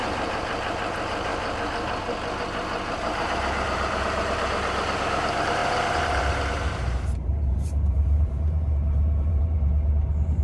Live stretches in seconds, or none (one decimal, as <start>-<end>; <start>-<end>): 1.3-2.4